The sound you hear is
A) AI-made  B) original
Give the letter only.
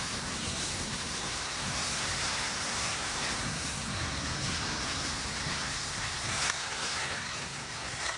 A